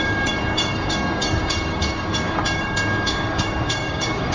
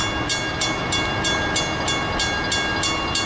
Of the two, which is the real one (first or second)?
second